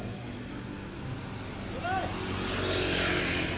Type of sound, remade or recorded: recorded